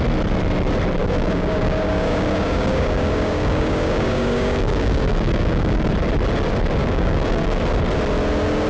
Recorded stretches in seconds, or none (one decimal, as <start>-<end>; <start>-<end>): 0.0-1.0; 5.9-6.8; 7.6-8.7